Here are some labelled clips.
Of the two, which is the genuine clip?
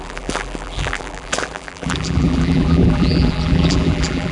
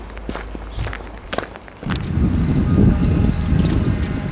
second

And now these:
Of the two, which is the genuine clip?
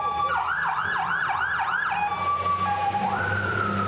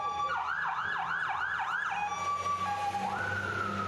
second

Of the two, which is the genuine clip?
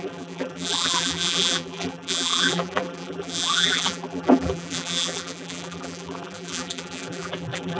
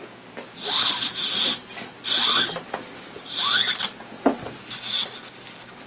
second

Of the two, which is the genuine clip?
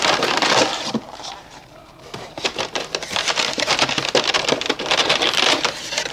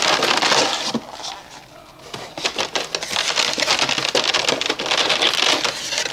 second